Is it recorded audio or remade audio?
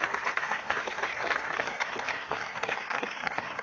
remade